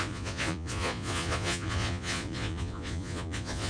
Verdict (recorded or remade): remade